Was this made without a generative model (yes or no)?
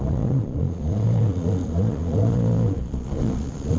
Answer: no